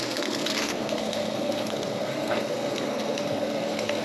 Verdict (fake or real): fake